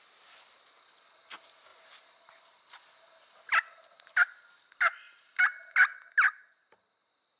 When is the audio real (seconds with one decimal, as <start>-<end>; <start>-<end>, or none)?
0.0-7.4

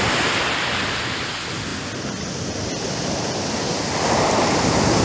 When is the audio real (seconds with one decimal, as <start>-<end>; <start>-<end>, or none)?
0.0-5.0

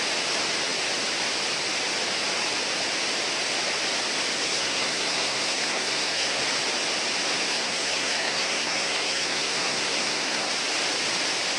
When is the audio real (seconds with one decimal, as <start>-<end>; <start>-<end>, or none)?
0.0-4.4; 6.4-7.3; 10.5-11.6

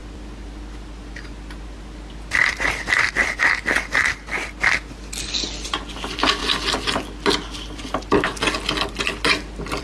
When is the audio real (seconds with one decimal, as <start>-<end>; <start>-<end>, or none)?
0.0-9.8